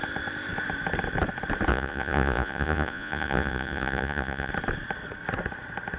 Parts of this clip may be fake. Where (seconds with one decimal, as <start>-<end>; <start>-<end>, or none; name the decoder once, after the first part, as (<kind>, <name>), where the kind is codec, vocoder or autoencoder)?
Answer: 1.7-4.5 (vocoder, Vocos)